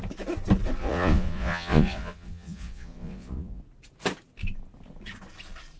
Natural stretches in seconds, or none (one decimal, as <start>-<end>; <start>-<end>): 0.0-0.8; 3.6-5.8